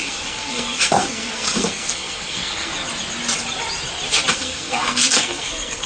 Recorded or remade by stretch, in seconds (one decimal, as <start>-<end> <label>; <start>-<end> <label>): 0.0-2.7 remade; 2.7-4.3 recorded; 4.3-5.9 remade